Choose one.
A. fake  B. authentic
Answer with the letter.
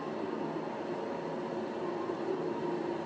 A